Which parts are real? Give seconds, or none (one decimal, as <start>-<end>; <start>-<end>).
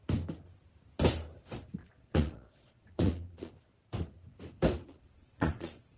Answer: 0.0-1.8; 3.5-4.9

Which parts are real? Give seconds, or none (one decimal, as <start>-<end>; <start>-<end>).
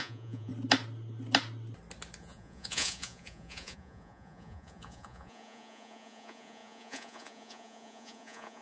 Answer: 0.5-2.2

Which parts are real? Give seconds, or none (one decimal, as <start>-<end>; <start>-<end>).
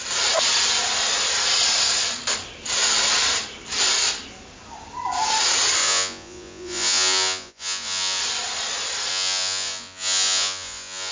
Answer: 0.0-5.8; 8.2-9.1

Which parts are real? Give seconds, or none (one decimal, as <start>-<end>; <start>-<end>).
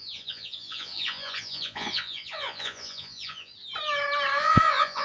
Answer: 3.5-4.4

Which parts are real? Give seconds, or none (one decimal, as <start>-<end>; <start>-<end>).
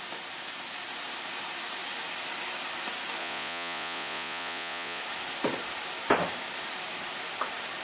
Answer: 0.0-3.2; 5.0-7.8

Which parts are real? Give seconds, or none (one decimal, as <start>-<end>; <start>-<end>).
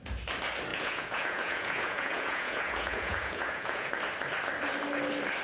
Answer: 0.0-0.7; 3.9-5.4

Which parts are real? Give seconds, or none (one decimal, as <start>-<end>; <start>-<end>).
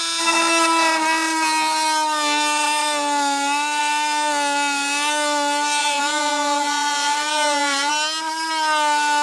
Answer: 0.0-5.8; 7.9-9.2